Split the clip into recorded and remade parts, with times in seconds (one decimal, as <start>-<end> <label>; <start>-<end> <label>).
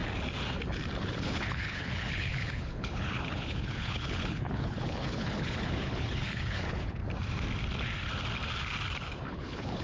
0.0-1.0 recorded; 1.0-7.0 remade; 7.0-9.3 recorded; 9.3-9.8 remade